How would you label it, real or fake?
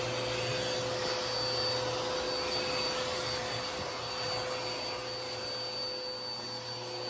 real